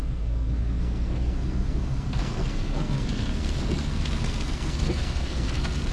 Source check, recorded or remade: remade